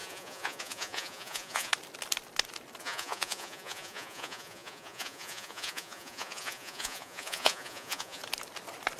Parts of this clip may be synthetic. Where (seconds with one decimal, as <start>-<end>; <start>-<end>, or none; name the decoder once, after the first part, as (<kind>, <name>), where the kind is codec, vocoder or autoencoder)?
0.0-1.7 (vocoder, Vocos); 2.8-8.2